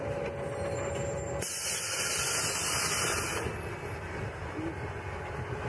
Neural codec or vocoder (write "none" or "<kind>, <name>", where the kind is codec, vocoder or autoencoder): none